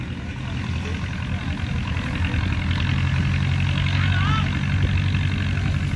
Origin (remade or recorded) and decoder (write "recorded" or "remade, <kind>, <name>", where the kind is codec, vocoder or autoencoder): recorded